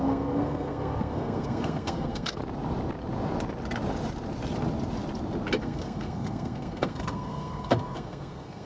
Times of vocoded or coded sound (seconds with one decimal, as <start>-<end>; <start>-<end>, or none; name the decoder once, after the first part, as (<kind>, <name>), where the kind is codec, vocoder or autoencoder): 0.0-2.4 (codec, SNAC); 5.6-8.7